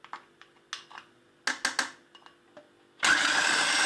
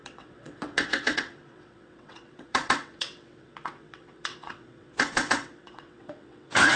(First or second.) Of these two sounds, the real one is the first